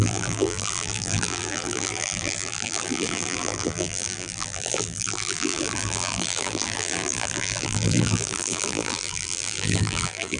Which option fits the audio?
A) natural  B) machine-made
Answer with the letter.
B